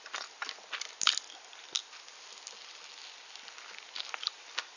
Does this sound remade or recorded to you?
recorded